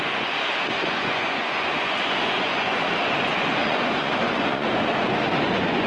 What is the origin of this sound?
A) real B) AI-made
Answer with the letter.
B